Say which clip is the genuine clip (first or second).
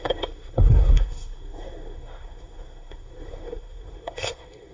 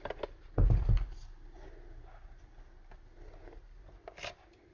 second